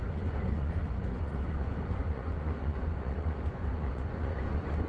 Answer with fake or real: fake